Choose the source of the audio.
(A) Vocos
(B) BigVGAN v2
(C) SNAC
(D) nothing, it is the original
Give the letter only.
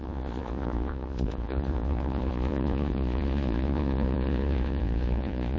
A